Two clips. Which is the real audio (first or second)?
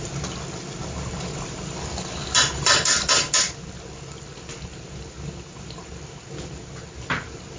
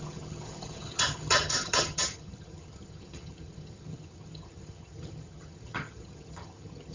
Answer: first